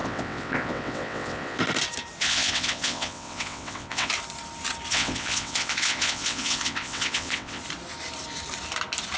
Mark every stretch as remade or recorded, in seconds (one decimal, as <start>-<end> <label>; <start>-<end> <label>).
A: 0.0-1.6 remade; 1.6-2.2 recorded; 2.2-4.1 remade; 4.1-4.9 recorded; 4.9-7.6 remade; 7.6-9.2 recorded